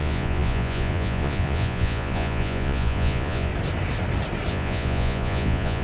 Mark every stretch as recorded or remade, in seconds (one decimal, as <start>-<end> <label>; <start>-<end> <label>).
0.0-3.5 remade; 3.5-4.5 recorded; 4.5-5.8 remade